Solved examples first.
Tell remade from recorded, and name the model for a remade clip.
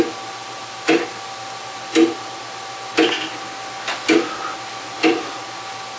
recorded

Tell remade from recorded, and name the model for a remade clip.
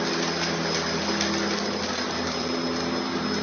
recorded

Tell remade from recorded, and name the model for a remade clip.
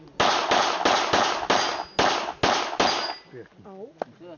recorded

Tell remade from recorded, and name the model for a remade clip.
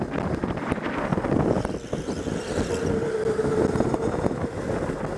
recorded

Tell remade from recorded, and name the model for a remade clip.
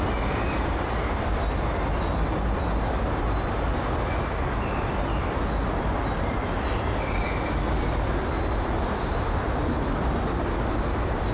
recorded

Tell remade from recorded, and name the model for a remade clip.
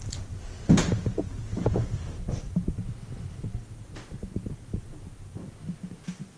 recorded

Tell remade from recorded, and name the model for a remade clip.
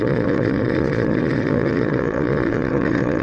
remade, vocoder, Vocos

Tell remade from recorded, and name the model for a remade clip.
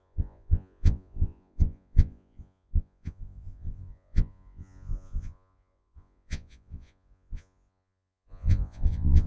remade, vocoder, Vocos